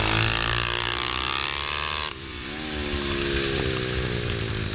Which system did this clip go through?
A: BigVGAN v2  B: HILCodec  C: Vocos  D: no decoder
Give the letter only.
D